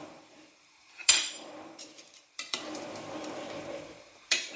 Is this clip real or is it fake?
fake